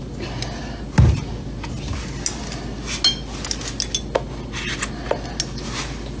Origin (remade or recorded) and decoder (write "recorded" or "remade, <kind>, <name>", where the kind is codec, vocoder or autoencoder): recorded